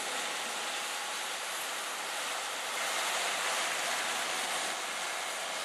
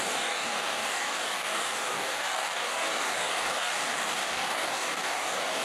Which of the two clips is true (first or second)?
first